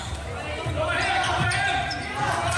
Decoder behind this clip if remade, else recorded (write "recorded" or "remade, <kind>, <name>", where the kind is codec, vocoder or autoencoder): recorded